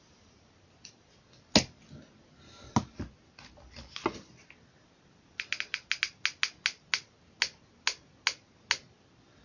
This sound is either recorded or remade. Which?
recorded